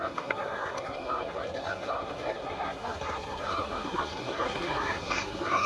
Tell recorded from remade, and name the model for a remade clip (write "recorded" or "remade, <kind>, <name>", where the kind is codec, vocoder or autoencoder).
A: remade, codec, SNAC